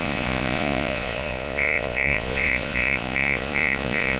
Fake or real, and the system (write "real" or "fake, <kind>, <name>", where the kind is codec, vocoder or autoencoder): fake, vocoder, Vocos